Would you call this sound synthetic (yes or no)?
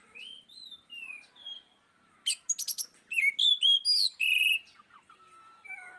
no